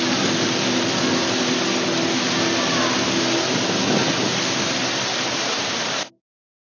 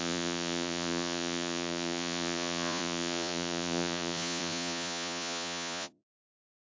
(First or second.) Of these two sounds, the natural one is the first